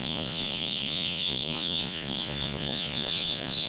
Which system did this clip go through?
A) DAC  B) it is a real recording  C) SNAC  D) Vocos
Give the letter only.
D